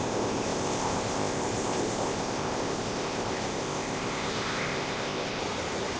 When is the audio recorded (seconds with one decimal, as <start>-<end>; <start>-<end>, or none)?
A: 5.4-6.0